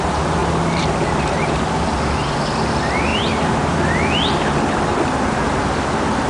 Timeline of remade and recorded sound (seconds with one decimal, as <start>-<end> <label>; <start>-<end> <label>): 0.0-0.4 recorded; 0.4-2.7 remade; 2.7-3.1 recorded; 3.1-3.7 remade; 3.7-6.3 recorded